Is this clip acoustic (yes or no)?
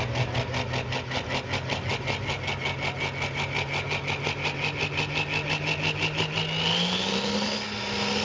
yes